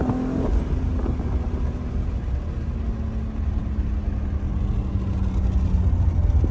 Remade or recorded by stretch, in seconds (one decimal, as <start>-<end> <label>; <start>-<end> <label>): 0.0-6.5 recorded